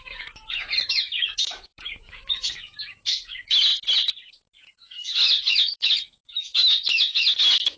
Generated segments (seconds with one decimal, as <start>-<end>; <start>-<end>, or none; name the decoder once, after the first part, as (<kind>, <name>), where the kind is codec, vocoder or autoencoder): 0.0-3.7 (autoencoder, DAC-VAE); 4.3-7.8